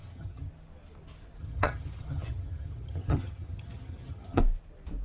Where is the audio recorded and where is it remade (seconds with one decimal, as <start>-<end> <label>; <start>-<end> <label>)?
0.0-0.5 remade; 0.5-1.4 recorded; 1.4-4.4 remade; 4.4-5.0 recorded